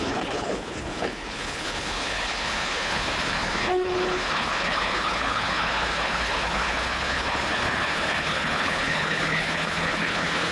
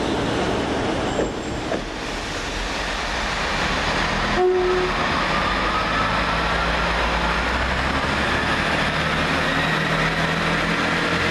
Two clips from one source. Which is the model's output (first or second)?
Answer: first